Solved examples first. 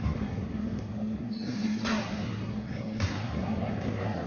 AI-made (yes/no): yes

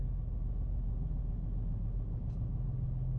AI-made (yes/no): no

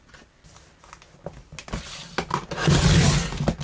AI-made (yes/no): no